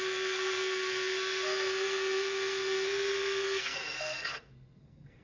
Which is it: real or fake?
fake